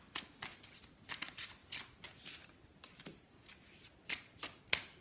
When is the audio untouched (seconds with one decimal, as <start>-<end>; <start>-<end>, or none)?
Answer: 0.0-5.0